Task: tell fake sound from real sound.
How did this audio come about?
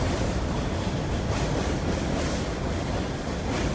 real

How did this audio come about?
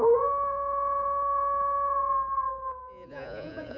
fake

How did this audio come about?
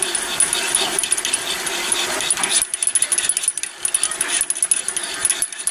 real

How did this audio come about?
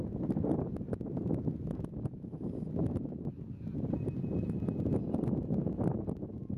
real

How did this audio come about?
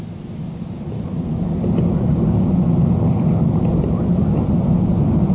real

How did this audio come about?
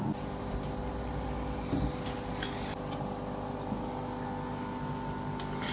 real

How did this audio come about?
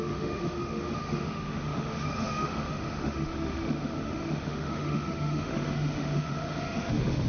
fake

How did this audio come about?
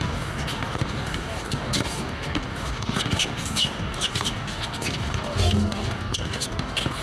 fake